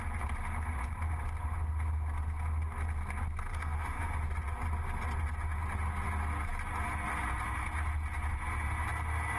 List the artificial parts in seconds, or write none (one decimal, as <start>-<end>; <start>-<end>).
3.5-4.1

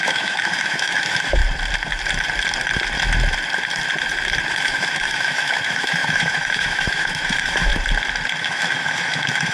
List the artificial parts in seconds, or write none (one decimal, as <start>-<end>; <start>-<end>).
0.0-1.4; 4.5-7.7; 8.4-9.5

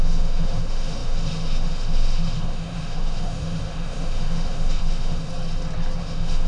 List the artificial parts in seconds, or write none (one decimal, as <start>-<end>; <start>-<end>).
0.0-5.3; 6.0-6.5

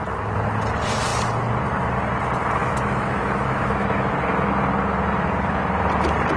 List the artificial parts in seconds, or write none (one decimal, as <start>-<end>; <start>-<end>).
2.6-4.1

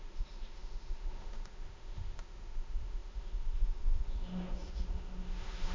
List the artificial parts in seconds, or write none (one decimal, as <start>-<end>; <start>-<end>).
0.0-5.7

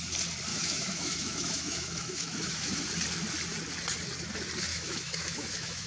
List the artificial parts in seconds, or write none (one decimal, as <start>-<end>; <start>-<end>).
0.5-2.8; 4.7-5.9